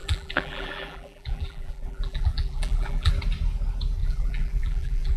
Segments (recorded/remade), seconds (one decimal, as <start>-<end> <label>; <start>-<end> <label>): 0.0-3.1 remade; 3.1-4.0 recorded; 4.0-5.2 remade